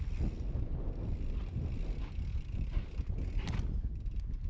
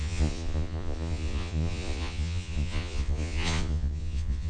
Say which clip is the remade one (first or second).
second